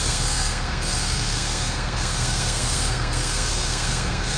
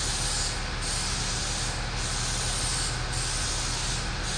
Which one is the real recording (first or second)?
second